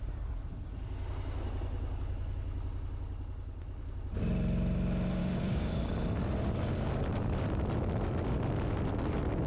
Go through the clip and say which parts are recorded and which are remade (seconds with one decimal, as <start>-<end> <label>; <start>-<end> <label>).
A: 0.0-5.2 recorded; 5.2-5.9 remade; 5.9-9.5 recorded